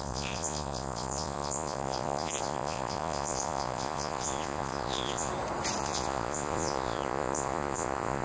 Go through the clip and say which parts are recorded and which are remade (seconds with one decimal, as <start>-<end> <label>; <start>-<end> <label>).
0.0-5.3 remade; 5.3-5.8 recorded; 5.8-8.2 remade